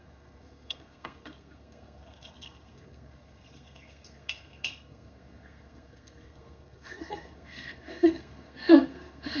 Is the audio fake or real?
fake